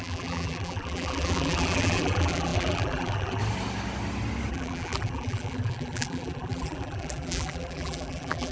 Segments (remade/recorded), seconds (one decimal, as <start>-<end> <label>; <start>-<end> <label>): 0.0-3.4 remade; 3.4-4.5 recorded; 4.5-8.5 remade